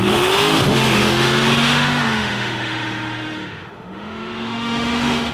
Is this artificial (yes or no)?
yes